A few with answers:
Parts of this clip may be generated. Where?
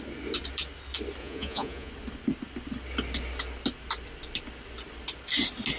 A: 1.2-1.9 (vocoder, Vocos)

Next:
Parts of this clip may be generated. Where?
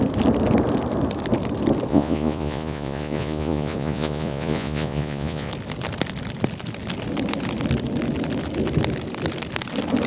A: 1.9-5.5 (vocoder, Vocos)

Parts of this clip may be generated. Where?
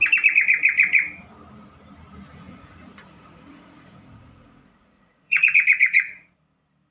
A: 2.3-6.4 (vocoder, Vocos)